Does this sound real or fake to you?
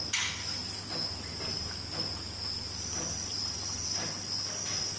real